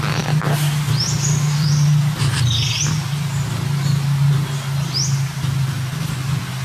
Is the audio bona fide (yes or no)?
yes